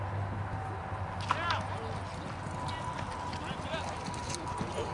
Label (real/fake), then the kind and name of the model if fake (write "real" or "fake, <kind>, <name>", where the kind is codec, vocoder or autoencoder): real